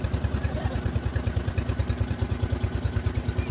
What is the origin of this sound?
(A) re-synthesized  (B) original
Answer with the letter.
B